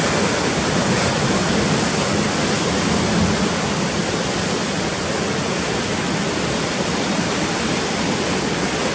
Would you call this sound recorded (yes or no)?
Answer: yes